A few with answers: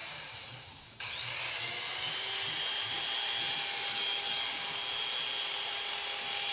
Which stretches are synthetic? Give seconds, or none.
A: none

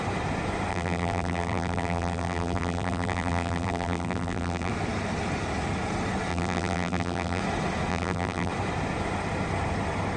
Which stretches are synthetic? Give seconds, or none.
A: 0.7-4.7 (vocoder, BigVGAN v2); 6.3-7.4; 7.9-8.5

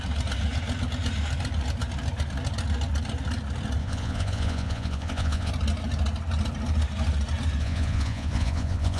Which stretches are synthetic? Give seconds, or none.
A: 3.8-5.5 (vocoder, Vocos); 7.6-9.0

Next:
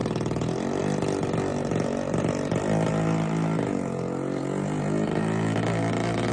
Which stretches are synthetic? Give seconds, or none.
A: none

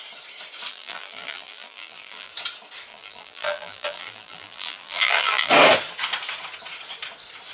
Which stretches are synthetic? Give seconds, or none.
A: 0.7-2.3 (vocoder, BigVGAN v2); 2.9-5.5

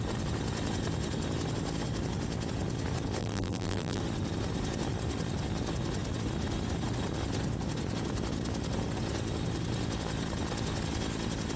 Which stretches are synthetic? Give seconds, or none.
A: 3.2-4.0 (vocoder, BigVGAN v2)